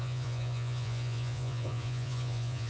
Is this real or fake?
fake